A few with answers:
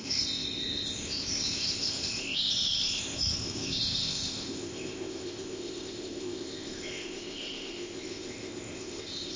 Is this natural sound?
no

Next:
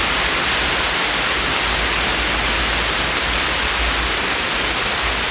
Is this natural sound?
yes